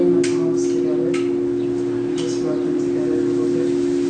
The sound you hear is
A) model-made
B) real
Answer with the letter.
B